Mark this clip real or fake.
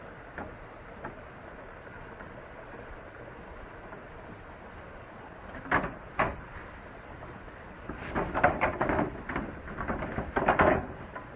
real